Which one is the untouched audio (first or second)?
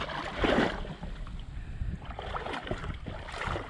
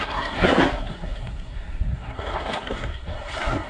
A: first